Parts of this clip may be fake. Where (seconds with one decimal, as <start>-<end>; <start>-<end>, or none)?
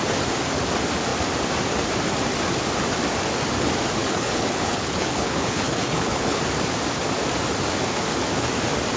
4.0-6.4